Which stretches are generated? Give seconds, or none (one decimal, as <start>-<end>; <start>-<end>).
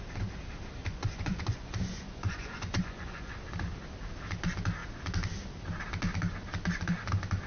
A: 0.8-3.3